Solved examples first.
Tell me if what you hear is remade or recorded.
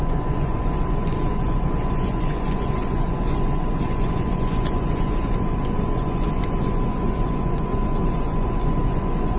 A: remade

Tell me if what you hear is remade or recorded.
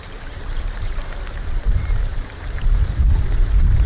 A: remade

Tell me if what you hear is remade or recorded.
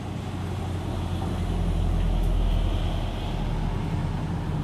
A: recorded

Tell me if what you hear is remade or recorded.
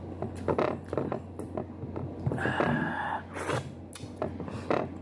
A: recorded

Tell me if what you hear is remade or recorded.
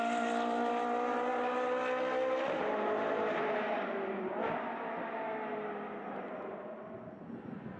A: recorded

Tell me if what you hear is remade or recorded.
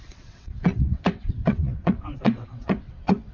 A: remade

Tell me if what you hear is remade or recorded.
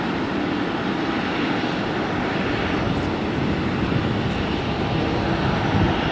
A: recorded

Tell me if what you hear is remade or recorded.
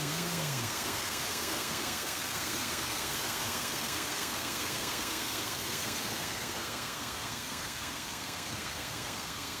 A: remade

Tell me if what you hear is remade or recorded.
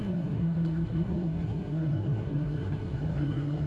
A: remade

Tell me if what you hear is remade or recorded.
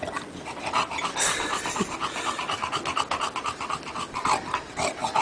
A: recorded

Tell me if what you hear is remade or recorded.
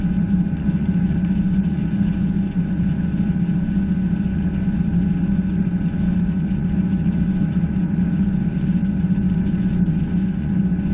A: remade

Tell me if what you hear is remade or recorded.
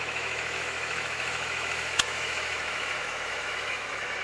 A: remade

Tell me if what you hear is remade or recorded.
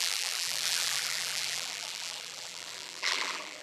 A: remade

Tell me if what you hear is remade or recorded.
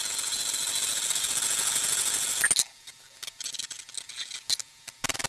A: recorded